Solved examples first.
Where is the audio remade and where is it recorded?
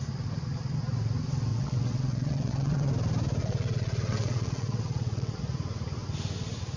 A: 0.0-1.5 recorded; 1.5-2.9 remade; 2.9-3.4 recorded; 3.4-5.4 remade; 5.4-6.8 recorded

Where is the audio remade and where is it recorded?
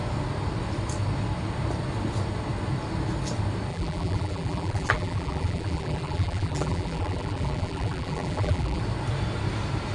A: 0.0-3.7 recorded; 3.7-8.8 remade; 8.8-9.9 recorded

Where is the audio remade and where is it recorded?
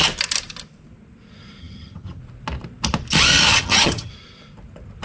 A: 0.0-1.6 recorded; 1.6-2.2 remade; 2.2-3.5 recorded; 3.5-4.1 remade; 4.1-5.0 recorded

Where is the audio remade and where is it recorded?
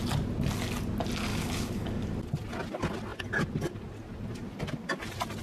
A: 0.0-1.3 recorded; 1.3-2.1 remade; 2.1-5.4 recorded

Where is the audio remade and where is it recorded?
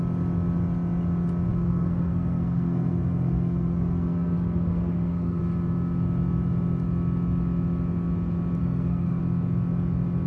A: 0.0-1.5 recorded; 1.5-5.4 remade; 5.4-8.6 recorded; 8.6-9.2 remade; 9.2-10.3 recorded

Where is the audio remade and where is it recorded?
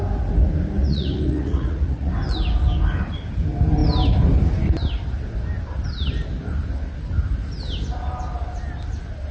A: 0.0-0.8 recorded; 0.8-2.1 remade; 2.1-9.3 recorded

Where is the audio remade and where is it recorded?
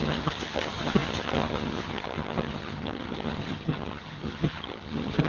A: 0.0-5.3 remade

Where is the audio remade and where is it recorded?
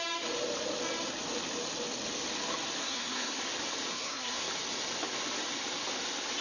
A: 0.0-2.8 recorded; 2.8-3.4 remade; 3.4-3.9 recorded; 3.9-4.5 remade; 4.5-6.4 recorded